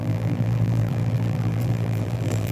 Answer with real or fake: fake